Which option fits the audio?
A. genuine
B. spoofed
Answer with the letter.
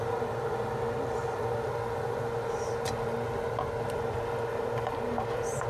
A